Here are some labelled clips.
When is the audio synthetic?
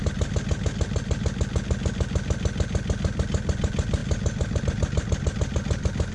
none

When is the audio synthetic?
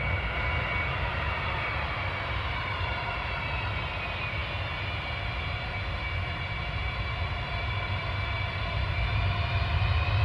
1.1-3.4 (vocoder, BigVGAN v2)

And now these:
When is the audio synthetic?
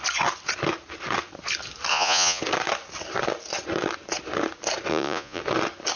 1.9-2.4 (vocoder, Vocos); 4.9-5.4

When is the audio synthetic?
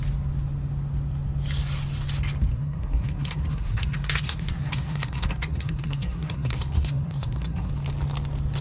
2.5-7.7 (codec, SNAC)